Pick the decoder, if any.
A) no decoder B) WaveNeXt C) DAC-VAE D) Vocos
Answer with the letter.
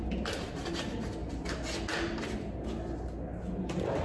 A